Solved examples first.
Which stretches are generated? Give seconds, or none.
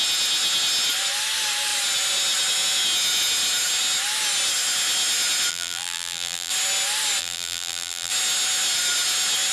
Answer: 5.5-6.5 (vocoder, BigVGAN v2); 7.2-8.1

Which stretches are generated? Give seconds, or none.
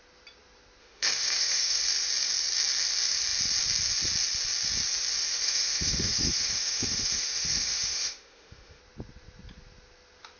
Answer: 0.8-1.8 (autoencoder, DAC-VAE); 5.3-8.8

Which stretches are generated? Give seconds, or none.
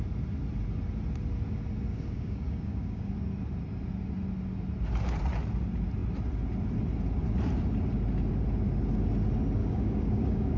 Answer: 1.9-3.1 (codec, DAC); 9.6-10.6